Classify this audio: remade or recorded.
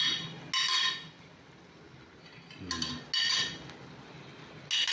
recorded